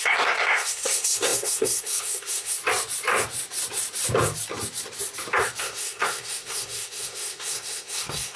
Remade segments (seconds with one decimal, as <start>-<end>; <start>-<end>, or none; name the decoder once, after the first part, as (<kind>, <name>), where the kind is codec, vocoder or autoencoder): 0.0-2.6 (codec, SNAC); 5.6-8.4